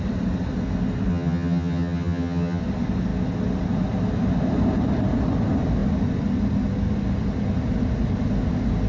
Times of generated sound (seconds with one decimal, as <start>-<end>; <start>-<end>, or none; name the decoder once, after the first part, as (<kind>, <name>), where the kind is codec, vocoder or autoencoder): 1.1-2.6 (vocoder, HiFi-GAN)